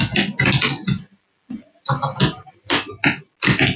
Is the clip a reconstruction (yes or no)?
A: no